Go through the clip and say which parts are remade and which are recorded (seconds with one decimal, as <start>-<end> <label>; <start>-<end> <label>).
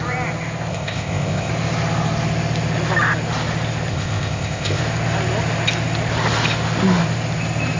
0.0-0.7 recorded; 0.7-1.5 remade; 1.5-3.9 recorded; 3.9-4.8 remade; 4.8-7.8 recorded